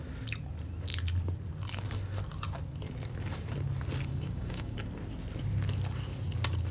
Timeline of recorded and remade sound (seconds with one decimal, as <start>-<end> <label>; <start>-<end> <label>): 0.0-4.1 recorded; 4.1-4.8 remade; 4.8-6.7 recorded